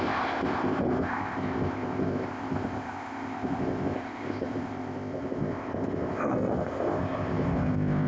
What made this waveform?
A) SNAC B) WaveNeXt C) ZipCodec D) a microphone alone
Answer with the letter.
C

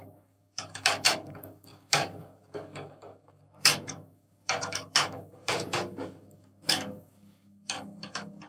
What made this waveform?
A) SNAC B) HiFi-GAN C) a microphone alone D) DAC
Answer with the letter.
D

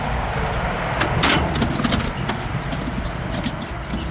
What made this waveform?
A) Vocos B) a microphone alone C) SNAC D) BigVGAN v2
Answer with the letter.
B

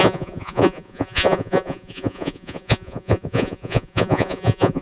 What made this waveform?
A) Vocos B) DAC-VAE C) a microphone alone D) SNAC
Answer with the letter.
A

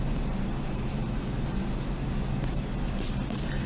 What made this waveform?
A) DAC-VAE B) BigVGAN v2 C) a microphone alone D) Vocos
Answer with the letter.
C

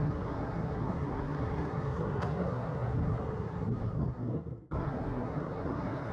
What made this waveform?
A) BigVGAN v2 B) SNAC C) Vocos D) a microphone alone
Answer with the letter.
B